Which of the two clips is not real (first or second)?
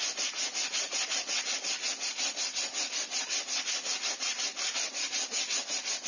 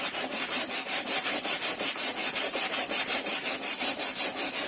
second